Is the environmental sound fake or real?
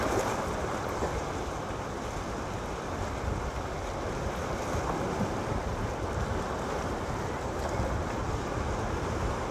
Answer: real